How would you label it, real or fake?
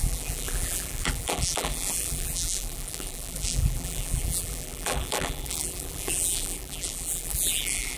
fake